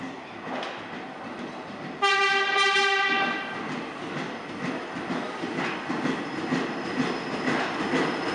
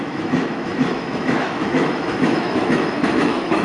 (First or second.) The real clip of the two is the first